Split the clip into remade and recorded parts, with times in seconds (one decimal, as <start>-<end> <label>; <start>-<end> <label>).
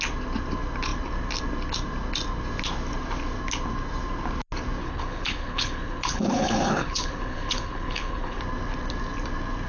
0.0-4.8 recorded; 4.8-8.4 remade; 8.4-9.7 recorded